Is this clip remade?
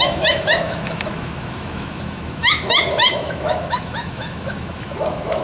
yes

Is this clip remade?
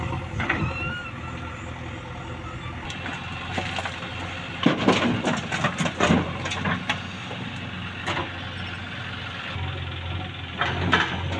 no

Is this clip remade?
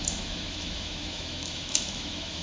yes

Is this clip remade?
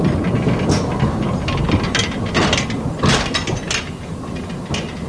no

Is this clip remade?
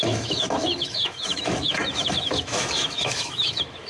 yes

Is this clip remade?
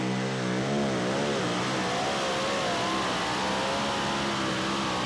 no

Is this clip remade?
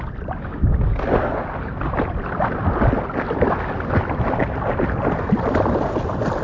no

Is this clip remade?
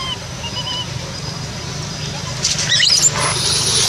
no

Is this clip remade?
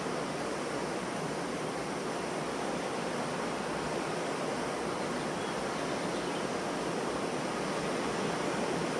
no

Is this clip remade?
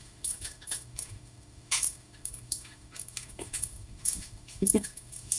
yes